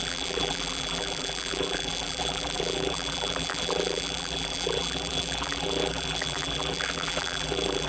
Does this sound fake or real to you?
fake